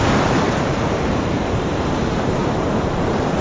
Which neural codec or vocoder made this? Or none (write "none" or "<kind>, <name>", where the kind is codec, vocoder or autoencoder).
vocoder, BigVGAN v2